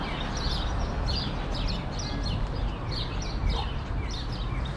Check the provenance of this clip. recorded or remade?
recorded